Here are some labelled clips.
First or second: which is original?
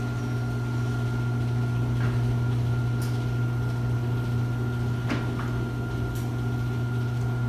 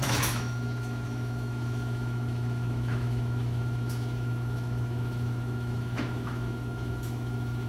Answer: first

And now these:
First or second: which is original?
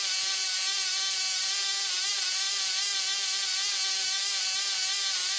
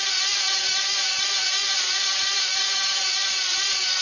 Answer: first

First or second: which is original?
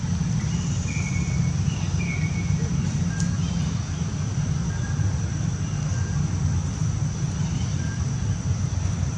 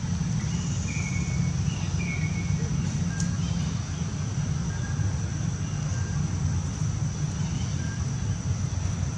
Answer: second